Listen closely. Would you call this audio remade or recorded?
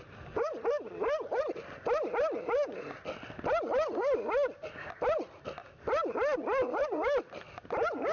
recorded